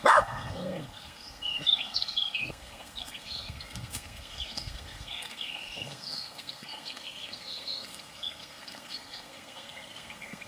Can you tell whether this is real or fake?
fake